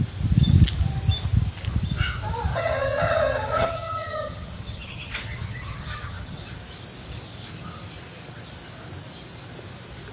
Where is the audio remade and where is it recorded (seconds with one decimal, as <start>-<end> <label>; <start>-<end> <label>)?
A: 0.0-2.5 recorded; 2.5-6.4 remade; 6.4-10.1 recorded